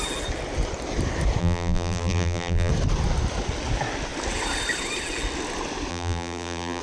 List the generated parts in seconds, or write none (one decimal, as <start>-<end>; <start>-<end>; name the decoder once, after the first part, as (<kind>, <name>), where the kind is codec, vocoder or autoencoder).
1.4-2.7 (vocoder, BigVGAN v2); 5.9-6.8